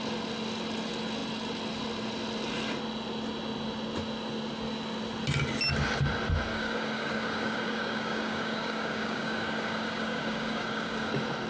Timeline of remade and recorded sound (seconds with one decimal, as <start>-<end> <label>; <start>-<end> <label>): 0.0-6.5 recorded; 6.5-11.1 remade; 11.1-11.5 recorded